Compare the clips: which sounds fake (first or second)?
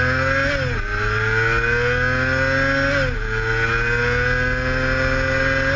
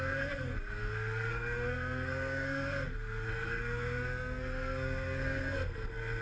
second